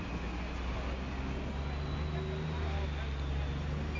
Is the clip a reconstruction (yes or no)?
no